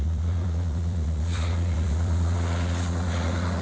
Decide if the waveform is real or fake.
fake